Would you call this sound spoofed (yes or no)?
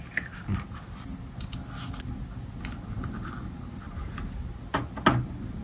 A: no